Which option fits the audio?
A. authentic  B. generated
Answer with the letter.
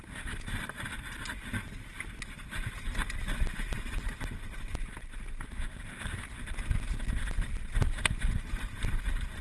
A